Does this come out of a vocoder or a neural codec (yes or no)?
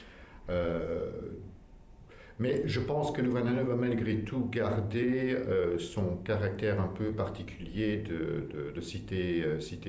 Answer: yes